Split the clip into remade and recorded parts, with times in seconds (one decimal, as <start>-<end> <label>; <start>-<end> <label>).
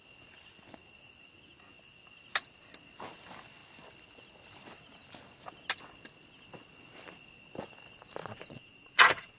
0.0-8.2 recorded; 8.2-9.4 remade